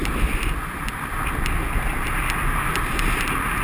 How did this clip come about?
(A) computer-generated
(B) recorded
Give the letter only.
B